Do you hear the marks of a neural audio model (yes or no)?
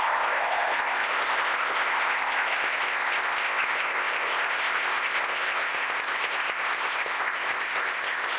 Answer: yes